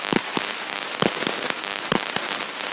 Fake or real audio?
real